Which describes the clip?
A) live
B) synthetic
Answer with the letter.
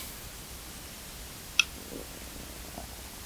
A